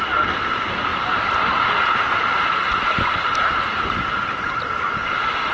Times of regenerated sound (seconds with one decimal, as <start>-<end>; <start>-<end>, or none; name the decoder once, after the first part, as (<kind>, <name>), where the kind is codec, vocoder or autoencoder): none